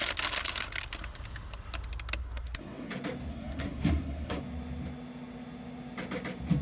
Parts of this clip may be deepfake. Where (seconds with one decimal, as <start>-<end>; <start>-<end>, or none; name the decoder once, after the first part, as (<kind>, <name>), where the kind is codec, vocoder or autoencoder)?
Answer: 2.2-2.9 (codec, SNAC); 3.3-4.4